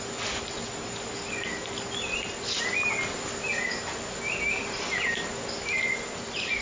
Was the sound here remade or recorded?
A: recorded